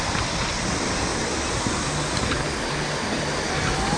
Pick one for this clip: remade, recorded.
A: recorded